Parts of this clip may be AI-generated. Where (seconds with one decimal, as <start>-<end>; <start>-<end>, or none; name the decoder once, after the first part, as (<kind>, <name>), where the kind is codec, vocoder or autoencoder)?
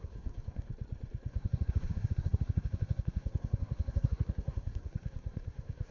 0.0-0.7 (codec, SNAC); 1.3-5.9